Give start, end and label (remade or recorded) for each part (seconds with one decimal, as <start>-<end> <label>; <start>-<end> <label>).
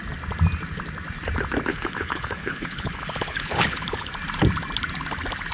0.0-1.7 recorded; 1.7-4.1 remade; 4.1-5.5 recorded